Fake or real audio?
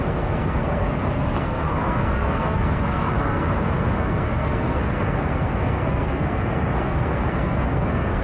fake